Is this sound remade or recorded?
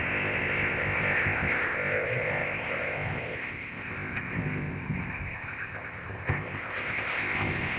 remade